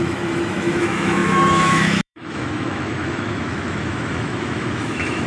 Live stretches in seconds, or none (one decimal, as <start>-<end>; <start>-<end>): none